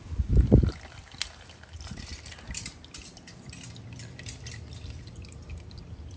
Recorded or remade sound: recorded